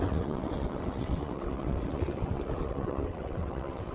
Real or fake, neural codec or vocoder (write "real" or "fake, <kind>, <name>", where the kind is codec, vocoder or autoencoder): fake, vocoder, WaveNeXt